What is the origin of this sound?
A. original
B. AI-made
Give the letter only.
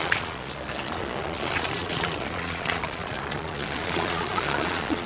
B